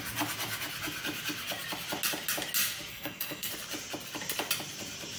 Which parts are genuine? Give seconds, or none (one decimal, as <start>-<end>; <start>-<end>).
0.0-2.9; 3.5-5.2